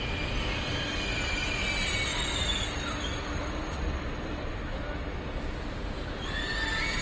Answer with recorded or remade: recorded